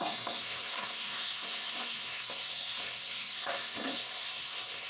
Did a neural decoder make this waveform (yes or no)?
yes